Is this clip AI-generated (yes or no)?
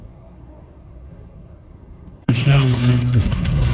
yes